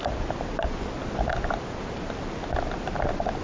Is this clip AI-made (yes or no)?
no